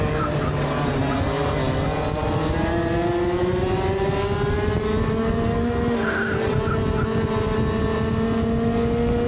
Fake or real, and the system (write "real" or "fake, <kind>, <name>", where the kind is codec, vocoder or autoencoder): real